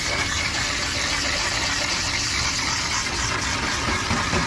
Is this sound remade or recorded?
recorded